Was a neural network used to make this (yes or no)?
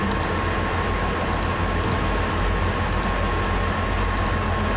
no